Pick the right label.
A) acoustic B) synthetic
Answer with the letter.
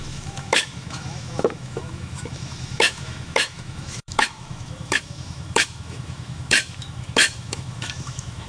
B